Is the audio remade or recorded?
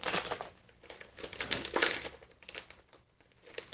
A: recorded